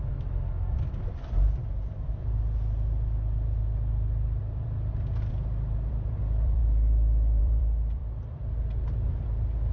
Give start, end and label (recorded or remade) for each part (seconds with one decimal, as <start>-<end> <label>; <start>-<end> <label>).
0.0-6.6 remade; 6.6-7.4 recorded; 7.4-9.7 remade